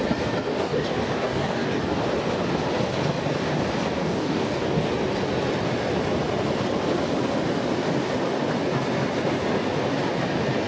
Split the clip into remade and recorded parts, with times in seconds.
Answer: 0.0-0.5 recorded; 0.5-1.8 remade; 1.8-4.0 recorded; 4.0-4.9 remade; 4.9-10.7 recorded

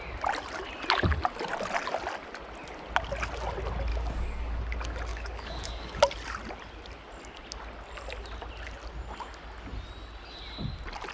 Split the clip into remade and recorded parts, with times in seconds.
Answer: 0.0-3.9 recorded; 3.9-4.6 remade; 4.6-5.1 recorded; 5.1-6.0 remade; 6.0-11.1 recorded

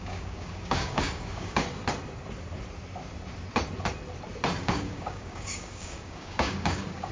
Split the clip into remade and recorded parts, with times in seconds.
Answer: 0.0-1.6 remade; 1.6-4.6 recorded; 4.6-7.1 remade